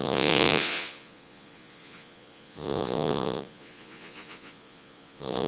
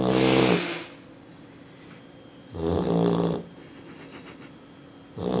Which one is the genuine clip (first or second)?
second